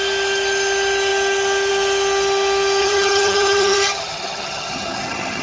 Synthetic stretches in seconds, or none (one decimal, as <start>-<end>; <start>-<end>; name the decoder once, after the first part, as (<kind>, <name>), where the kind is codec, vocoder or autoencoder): 2.8-5.4 (vocoder, HiFi-GAN)